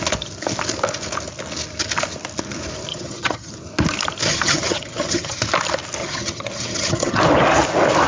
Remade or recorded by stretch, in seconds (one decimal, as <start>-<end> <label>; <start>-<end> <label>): 0.0-2.9 recorded; 2.9-3.5 remade; 3.5-4.3 recorded; 4.3-5.4 remade; 5.4-6.0 recorded; 6.0-7.2 remade; 7.2-8.1 recorded